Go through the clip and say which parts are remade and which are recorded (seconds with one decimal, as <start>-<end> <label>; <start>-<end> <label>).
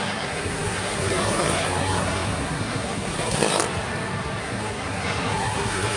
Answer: 0.0-3.6 remade; 3.6-4.4 recorded; 4.4-6.0 remade